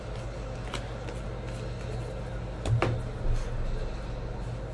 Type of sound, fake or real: real